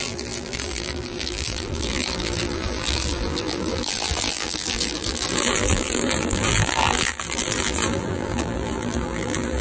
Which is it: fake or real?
fake